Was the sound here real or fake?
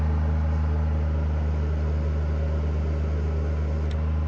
real